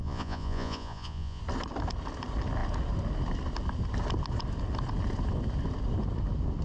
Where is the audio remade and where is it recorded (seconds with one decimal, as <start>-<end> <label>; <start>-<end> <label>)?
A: 0.0-1.4 remade; 1.4-6.6 recorded